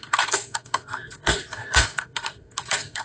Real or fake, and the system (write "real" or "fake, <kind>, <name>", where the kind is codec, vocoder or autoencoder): fake, codec, SNAC